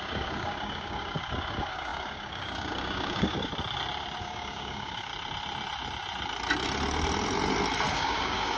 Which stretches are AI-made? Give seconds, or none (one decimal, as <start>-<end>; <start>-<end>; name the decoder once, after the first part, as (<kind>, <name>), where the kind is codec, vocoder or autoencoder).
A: 0.0-3.5 (codec, DAC); 4.2-5.1; 7.9-8.6